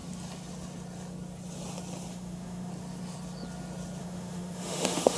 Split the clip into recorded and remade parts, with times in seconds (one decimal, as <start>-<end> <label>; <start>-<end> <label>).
0.0-2.1 recorded; 2.1-2.7 remade; 2.7-4.0 recorded; 4.0-5.2 remade